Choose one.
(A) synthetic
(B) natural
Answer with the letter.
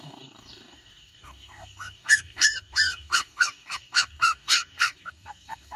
A